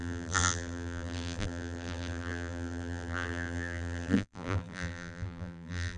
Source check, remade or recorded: remade